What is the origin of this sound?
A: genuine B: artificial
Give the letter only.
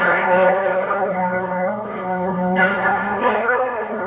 B